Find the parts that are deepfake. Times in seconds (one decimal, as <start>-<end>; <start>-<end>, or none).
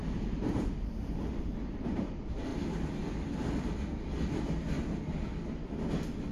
0.0-2.5